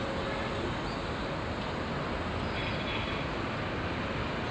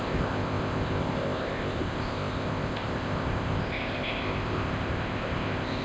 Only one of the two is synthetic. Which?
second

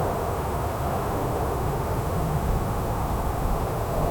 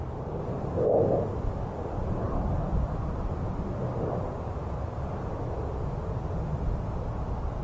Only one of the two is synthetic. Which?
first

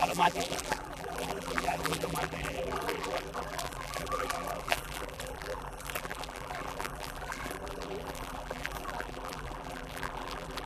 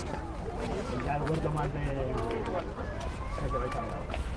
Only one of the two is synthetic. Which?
first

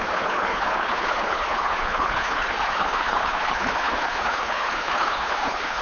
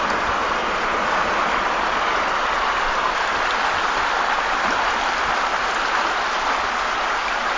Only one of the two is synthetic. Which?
first